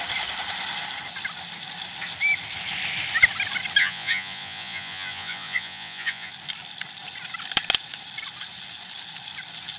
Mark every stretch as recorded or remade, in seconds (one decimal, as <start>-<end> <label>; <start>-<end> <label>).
0.0-3.8 recorded; 3.8-6.3 remade; 6.3-9.8 recorded